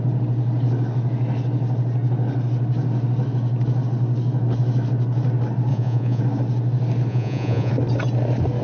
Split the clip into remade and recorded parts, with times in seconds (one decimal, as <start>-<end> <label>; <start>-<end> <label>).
0.0-5.7 recorded; 5.7-6.2 remade; 6.2-7.1 recorded; 7.1-7.7 remade; 7.7-8.6 recorded